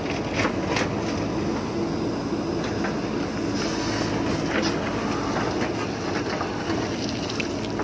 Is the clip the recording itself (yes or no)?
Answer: yes